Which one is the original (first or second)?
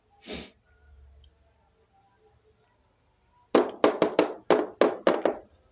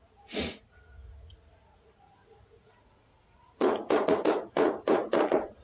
first